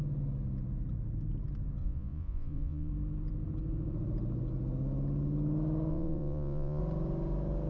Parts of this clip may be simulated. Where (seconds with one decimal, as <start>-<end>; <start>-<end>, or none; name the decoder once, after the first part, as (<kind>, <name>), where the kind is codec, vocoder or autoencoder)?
1.8-2.9 (vocoder, Vocos); 5.9-6.8